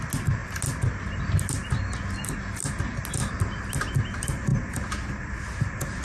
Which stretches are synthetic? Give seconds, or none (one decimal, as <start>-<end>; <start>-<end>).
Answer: none

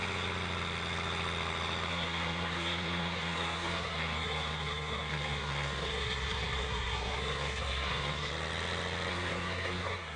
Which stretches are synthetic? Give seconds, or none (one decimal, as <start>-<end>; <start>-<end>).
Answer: 1.9-8.3; 9.1-10.2

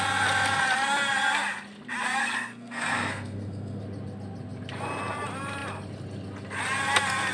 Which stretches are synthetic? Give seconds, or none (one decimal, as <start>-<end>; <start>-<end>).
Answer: 2.2-3.8